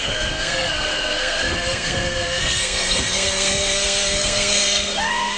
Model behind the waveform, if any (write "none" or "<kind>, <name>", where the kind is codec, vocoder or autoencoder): codec, SNAC